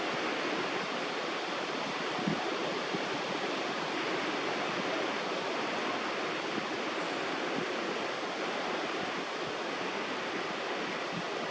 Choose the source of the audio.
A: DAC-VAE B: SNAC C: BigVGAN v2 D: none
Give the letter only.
D